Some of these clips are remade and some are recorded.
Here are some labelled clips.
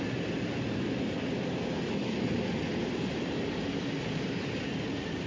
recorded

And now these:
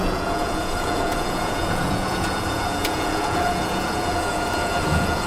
remade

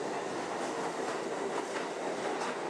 recorded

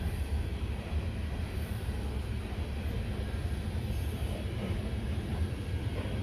remade